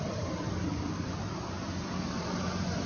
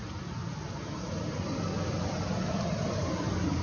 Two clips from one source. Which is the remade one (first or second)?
first